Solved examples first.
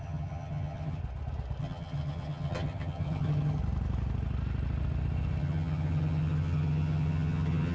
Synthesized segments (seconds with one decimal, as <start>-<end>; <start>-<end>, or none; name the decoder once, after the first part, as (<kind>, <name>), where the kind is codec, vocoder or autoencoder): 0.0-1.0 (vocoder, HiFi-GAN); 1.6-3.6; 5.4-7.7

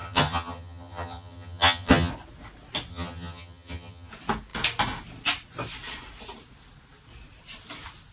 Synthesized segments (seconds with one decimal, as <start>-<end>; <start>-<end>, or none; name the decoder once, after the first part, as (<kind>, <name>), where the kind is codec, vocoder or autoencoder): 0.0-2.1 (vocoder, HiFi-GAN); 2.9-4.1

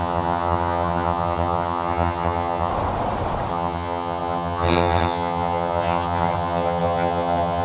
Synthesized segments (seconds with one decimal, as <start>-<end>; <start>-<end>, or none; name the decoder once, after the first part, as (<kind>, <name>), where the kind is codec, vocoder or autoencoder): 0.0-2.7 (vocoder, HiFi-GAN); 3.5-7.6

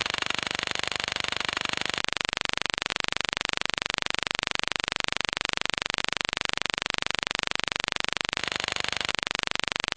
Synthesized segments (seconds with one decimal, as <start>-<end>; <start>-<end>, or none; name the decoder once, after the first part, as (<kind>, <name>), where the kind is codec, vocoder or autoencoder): 0.0-2.0 (vocoder, HiFi-GAN); 8.4-9.1

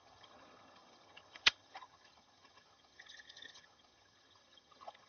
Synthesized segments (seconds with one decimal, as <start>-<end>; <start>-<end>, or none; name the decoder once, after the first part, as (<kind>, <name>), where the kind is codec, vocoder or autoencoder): 0.0-5.1 (vocoder, HiFi-GAN)